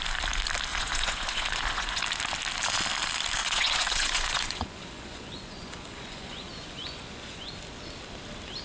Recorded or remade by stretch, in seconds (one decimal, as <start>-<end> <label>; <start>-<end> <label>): 0.0-0.7 recorded; 0.7-2.0 remade; 2.0-3.4 recorded; 3.4-7.5 remade; 7.5-8.6 recorded